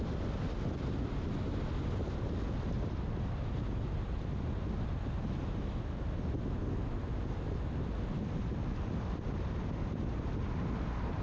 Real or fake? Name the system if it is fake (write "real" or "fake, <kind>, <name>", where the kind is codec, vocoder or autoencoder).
real